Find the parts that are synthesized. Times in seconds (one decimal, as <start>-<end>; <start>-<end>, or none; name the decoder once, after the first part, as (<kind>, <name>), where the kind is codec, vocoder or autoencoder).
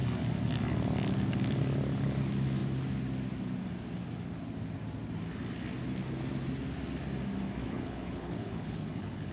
7.6-9.3 (codec, HILCodec)